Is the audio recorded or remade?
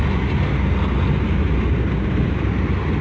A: recorded